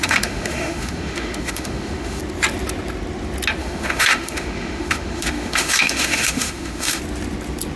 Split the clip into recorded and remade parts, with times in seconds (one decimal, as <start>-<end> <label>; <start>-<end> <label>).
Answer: 0.0-2.2 remade; 2.2-3.6 recorded; 3.6-7.0 remade; 7.0-7.8 recorded